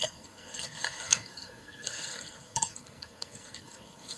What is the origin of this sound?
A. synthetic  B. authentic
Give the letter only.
A